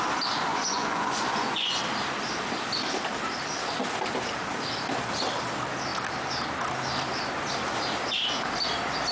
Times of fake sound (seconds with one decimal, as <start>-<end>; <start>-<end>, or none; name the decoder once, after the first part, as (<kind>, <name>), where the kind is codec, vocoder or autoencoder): 0.5-1.8 (vocoder, Vocos)